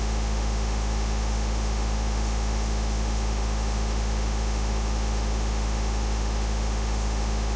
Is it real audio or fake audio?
fake